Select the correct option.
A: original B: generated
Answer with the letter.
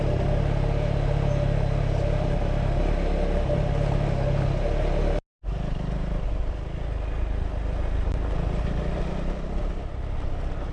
A